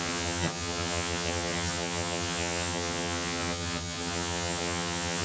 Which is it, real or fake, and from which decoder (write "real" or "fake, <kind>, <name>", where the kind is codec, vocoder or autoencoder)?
fake, vocoder, HiFi-GAN